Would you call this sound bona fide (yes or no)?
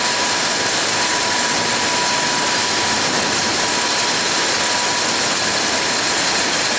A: yes